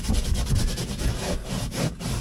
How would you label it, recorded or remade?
recorded